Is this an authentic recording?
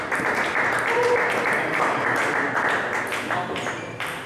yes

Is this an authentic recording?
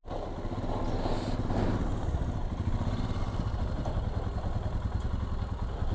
yes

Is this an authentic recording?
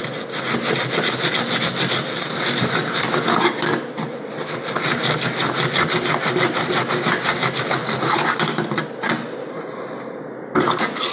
yes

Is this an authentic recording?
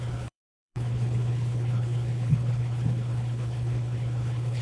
no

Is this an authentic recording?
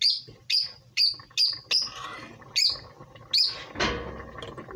yes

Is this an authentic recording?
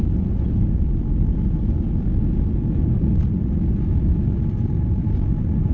yes